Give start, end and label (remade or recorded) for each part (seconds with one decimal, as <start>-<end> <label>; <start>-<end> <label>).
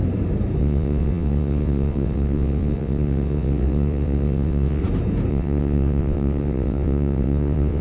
0.0-0.6 recorded; 0.6-4.8 remade; 4.8-5.3 recorded; 5.3-7.8 remade